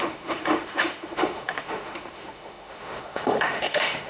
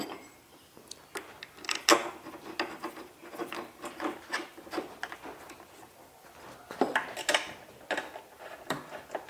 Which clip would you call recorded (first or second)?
second